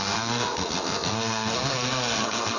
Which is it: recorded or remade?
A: remade